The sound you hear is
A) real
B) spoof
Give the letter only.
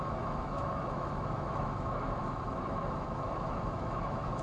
B